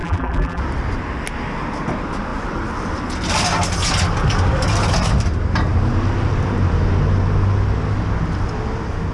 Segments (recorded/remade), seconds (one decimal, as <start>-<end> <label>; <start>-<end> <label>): 0.0-0.6 remade; 0.6-9.1 recorded